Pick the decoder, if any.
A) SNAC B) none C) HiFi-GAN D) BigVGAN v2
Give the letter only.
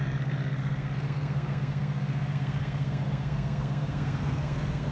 A